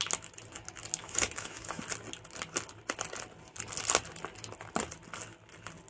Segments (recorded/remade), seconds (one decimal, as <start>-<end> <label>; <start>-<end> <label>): 0.0-1.0 recorded; 1.0-1.8 remade; 1.8-5.9 recorded